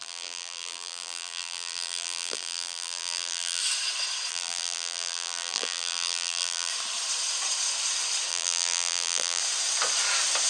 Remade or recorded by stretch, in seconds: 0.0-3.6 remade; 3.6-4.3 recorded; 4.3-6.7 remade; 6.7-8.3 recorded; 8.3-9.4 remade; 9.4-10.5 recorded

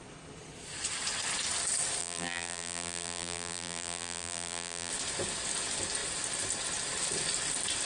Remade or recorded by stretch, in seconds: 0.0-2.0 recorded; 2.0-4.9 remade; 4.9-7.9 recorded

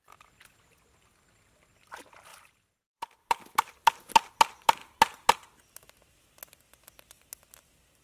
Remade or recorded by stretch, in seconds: 0.0-8.0 recorded

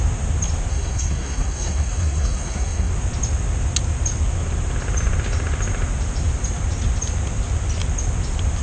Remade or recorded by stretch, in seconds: 0.0-0.7 recorded; 0.7-2.9 remade; 2.9-8.6 recorded